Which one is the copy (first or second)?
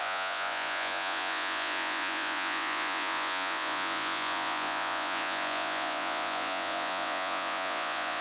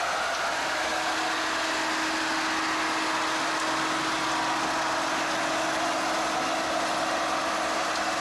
first